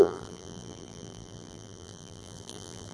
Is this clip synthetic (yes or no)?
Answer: yes